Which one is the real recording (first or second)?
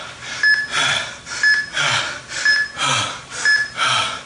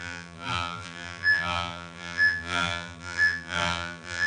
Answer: first